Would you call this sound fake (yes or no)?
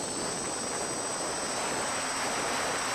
no